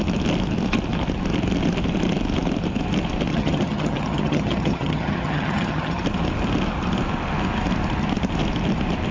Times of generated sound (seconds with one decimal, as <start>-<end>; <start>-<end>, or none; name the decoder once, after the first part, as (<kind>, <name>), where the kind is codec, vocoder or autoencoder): 3.3-6.0 (vocoder, HiFi-GAN)